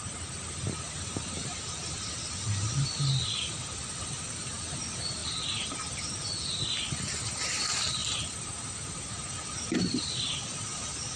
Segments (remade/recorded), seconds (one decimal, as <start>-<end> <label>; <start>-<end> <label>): 0.0-11.2 recorded